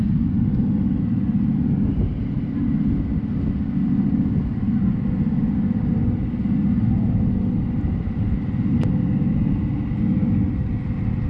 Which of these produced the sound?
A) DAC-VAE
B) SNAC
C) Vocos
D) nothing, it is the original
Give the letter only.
D